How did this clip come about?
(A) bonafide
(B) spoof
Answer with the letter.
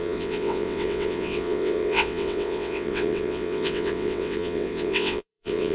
B